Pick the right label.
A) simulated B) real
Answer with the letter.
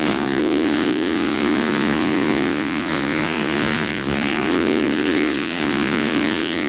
A